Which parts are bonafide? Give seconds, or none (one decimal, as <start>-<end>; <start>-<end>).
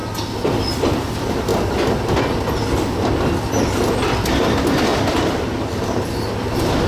0.0-6.9